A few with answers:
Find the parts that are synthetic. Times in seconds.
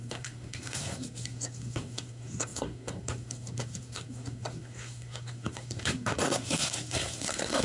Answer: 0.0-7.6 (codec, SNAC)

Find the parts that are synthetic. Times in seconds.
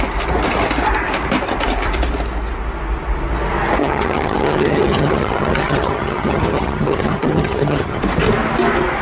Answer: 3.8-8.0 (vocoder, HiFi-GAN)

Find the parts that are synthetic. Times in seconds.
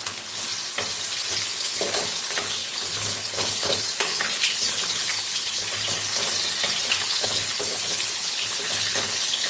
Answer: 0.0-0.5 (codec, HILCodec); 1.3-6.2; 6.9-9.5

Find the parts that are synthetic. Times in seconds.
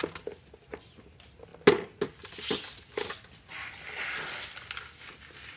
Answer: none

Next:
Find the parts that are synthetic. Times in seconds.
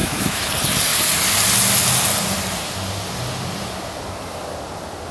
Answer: 0.0-0.5 (autoencoder, DAC-VAE)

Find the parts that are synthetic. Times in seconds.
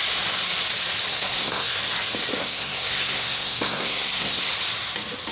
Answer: 1.1-1.8 (codec, SNAC); 2.4-4.5